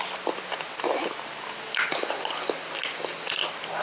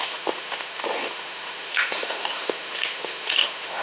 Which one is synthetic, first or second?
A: second